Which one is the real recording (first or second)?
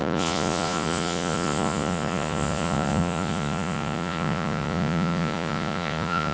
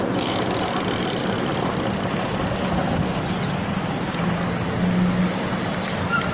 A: second